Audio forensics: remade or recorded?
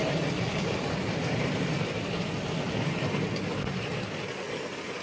recorded